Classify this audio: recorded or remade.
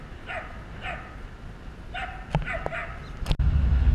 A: recorded